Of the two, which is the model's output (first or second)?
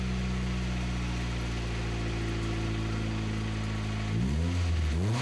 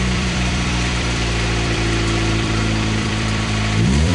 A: second